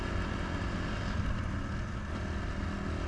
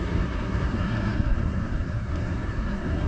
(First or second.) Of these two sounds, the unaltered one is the first